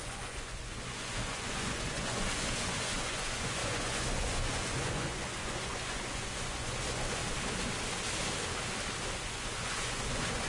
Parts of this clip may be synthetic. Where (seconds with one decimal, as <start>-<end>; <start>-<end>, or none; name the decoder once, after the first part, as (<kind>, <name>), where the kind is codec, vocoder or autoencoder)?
0.0-7.2 (vocoder, Vocos); 9.1-10.5